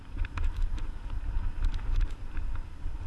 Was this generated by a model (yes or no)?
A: no